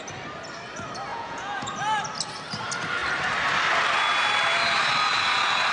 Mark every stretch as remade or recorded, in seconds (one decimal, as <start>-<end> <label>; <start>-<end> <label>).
0.0-1.1 recorded; 1.1-1.7 remade; 1.7-5.7 recorded

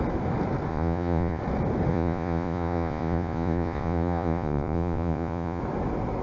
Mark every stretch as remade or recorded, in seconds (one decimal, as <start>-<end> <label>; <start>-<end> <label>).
0.0-0.7 recorded; 0.7-1.4 remade; 1.4-1.9 recorded; 1.9-5.6 remade; 5.6-6.2 recorded

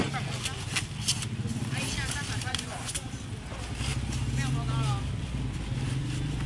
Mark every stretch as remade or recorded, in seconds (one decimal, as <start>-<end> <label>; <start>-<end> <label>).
0.0-2.5 recorded; 2.5-3.1 remade; 3.1-6.5 recorded

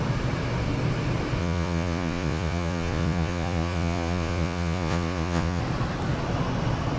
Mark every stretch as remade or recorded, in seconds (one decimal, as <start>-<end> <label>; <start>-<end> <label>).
0.0-1.4 recorded; 1.4-5.6 remade; 5.6-7.0 recorded

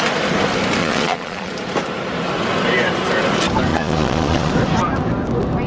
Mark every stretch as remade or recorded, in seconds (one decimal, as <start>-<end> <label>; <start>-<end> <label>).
0.0-0.8 recorded; 0.8-1.5 remade; 1.5-3.7 recorded; 3.7-4.5 remade; 4.5-5.7 recorded

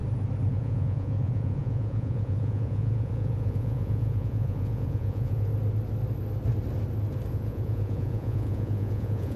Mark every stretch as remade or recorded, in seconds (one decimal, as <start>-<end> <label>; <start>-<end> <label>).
0.0-0.5 recorded; 0.5-5.5 remade; 5.5-7.3 recorded; 7.3-9.4 remade